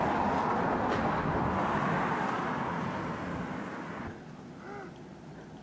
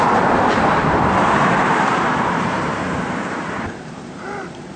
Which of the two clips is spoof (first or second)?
second